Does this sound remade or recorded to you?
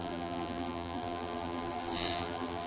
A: remade